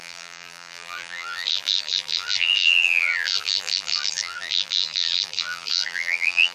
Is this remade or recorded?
remade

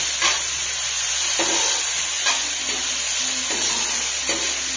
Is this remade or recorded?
recorded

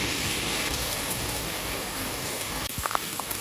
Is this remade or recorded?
remade